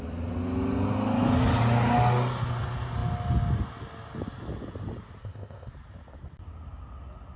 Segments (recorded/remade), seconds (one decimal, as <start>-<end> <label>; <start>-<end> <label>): 0.0-5.2 recorded; 5.2-5.7 remade; 5.7-7.4 recorded